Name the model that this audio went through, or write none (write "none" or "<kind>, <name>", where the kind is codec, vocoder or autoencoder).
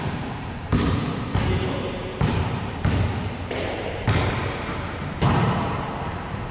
vocoder, BigVGAN v2